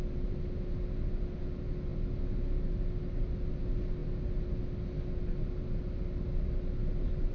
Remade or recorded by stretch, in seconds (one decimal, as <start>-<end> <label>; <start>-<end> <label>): 0.0-7.3 recorded